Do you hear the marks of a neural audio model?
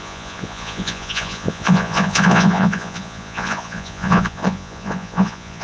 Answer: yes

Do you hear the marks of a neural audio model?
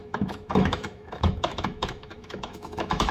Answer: yes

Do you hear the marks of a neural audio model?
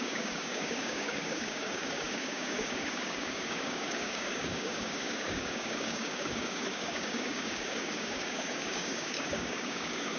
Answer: yes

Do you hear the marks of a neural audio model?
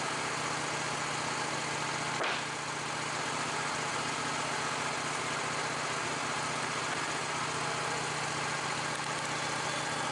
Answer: no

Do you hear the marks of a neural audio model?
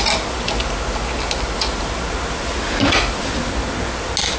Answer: no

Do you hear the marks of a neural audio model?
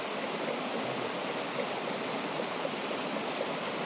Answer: no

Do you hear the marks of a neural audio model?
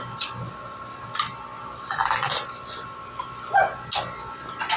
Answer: no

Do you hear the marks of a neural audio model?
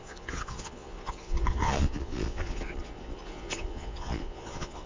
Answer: yes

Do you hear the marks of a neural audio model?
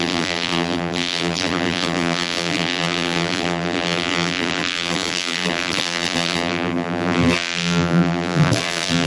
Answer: yes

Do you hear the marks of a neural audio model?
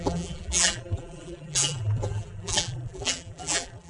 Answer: yes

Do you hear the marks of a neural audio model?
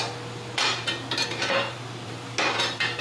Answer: no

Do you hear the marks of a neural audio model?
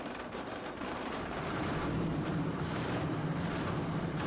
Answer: yes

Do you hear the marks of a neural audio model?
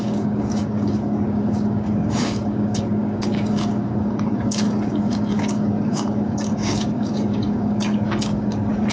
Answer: yes